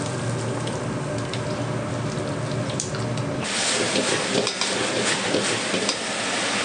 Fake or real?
real